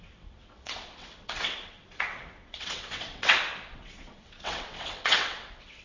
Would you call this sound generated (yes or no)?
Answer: yes